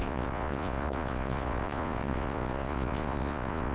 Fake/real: fake